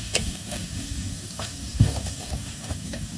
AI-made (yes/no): yes